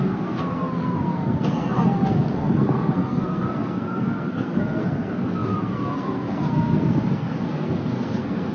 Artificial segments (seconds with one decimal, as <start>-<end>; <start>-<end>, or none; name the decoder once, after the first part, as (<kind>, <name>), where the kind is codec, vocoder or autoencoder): 0.0-8.5 (codec, SNAC)